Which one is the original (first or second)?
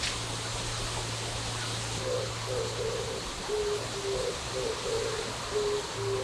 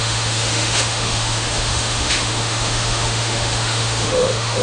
first